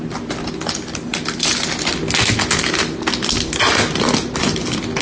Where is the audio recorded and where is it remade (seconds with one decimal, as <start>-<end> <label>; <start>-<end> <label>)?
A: 0.0-5.0 recorded